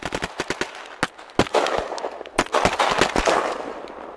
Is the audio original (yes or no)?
yes